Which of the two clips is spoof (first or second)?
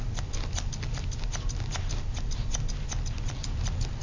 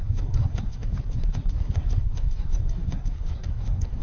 second